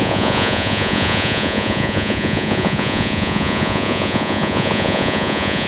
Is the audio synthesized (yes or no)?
yes